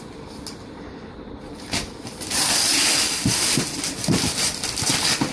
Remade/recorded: recorded